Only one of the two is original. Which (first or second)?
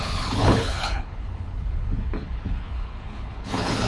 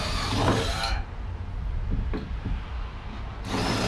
second